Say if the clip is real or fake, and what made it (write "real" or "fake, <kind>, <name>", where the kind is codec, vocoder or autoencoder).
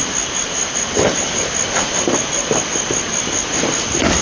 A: real